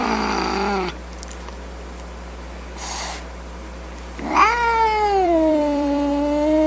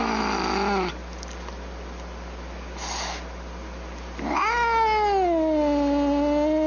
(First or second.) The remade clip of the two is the first